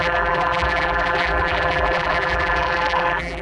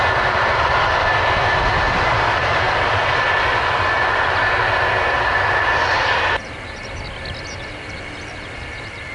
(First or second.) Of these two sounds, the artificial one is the first